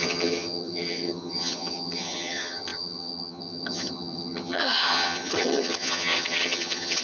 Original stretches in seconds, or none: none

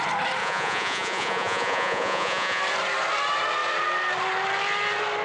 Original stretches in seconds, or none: 0.0-0.4; 2.6-5.2

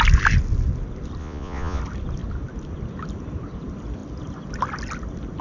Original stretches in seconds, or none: 0.0-1.2; 1.8-5.4

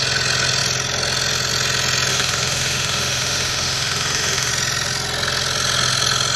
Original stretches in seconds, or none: 0.0-2.1; 4.5-6.4

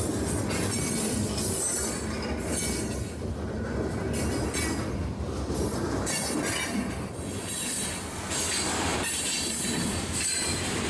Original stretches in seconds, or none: 0.0-8.9; 10.2-10.9

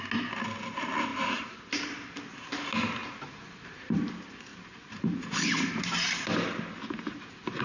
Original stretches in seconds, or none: 0.0-1.1; 2.2-3.0; 4.1-4.5; 5.8-7.6